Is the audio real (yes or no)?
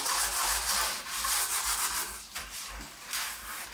yes